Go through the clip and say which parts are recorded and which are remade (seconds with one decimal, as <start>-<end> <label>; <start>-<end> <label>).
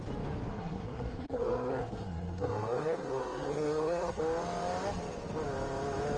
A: 0.0-0.5 recorded; 0.5-4.2 remade; 4.2-6.2 recorded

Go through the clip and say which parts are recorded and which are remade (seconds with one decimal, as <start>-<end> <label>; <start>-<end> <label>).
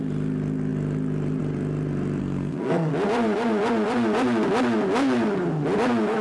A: 0.0-2.2 recorded; 2.2-2.9 remade; 2.9-6.2 recorded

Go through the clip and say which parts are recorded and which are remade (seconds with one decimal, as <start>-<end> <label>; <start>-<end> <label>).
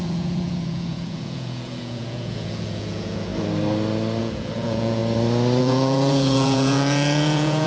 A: 0.0-3.3 remade; 3.3-4.2 recorded; 4.2-5.0 remade; 5.0-5.6 recorded; 5.6-7.7 remade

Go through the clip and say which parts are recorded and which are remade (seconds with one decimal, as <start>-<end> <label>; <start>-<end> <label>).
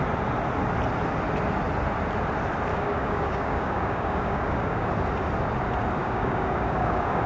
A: 0.0-2.7 recorded; 2.7-4.9 remade; 4.9-6.0 recorded; 6.0-7.3 remade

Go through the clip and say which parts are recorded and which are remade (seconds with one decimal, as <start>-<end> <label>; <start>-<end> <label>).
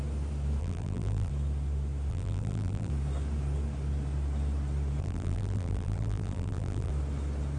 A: 0.0-0.6 recorded; 0.6-1.3 remade; 1.3-2.1 recorded; 2.1-2.9 remade; 2.9-5.0 recorded; 5.0-6.9 remade; 6.9-7.6 recorded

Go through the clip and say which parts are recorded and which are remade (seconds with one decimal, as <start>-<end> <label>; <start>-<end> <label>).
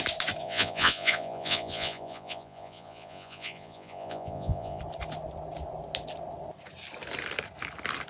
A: 0.0-0.4 recorded; 0.4-4.8 remade; 4.8-8.1 recorded